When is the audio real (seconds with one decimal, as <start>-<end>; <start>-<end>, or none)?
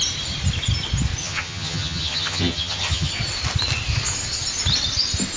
0.0-1.2; 3.1-5.4